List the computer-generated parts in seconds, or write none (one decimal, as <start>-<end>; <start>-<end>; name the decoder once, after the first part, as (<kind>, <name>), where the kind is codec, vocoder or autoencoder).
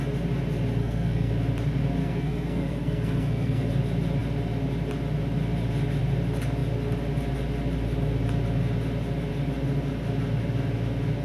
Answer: 0.8-1.3 (codec, SNAC); 2.0-3.7